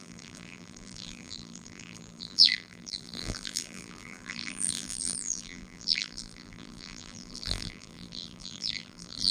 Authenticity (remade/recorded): remade